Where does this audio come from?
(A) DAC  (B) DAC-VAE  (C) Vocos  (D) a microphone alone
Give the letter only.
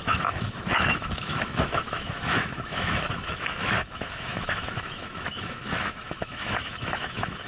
B